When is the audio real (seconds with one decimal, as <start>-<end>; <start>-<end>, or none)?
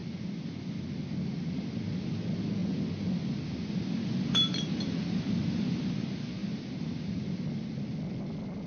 0.0-8.7